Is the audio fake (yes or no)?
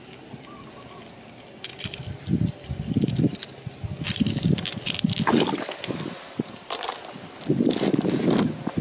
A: no